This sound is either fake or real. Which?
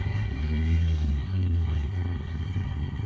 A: fake